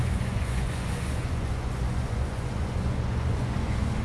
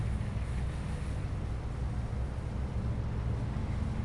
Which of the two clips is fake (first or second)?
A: first